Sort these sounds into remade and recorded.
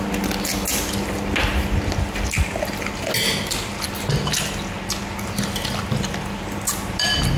recorded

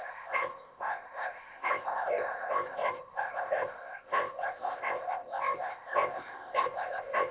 remade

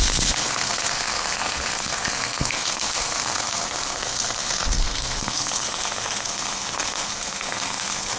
remade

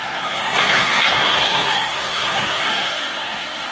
remade